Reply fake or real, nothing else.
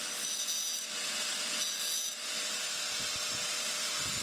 real